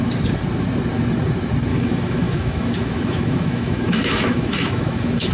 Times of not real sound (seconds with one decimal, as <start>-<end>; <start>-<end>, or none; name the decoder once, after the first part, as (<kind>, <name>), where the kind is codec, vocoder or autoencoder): 1.7-5.3 (autoencoder, DAC-VAE)